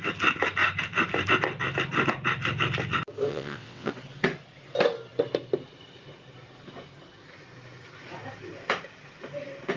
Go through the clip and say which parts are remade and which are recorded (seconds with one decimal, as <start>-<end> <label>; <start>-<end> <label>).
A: 0.0-3.3 recorded; 3.3-3.9 remade; 3.9-9.8 recorded